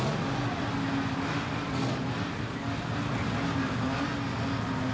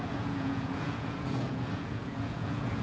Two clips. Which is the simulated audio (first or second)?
second